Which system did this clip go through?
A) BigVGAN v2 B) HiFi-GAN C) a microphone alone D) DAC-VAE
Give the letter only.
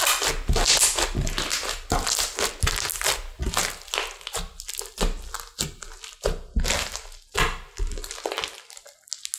C